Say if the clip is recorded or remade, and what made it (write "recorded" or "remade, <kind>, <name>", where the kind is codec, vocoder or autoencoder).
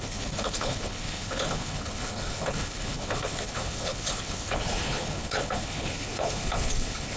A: remade, codec, HILCodec